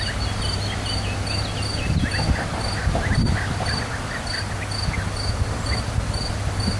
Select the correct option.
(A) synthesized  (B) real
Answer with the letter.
B